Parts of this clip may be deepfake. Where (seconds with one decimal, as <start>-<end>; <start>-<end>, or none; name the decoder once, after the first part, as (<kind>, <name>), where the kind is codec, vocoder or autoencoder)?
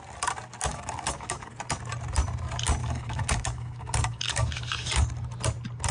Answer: 0.7-1.5 (codec, DAC); 2.8-5.1